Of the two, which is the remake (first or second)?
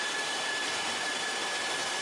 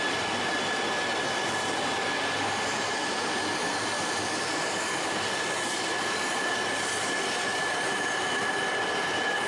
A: first